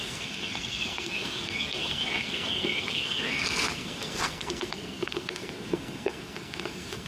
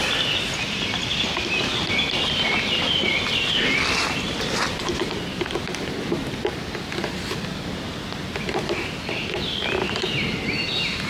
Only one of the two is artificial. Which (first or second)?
first